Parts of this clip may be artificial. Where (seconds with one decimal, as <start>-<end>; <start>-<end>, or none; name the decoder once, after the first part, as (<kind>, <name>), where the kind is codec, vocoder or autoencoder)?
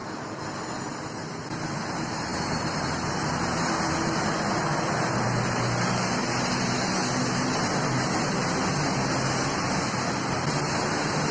none